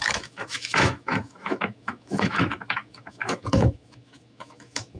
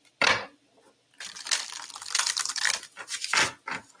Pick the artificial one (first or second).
first